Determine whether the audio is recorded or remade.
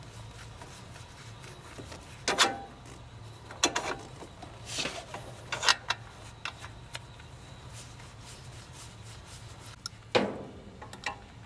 recorded